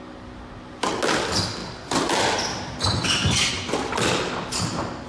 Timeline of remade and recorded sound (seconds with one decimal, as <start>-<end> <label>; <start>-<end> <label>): 0.0-5.1 recorded